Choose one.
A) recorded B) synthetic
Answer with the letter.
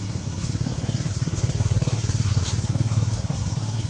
B